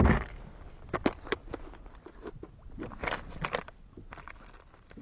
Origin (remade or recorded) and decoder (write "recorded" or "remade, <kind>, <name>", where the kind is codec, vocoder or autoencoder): recorded